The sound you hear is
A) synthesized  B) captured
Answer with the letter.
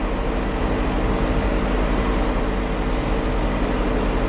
B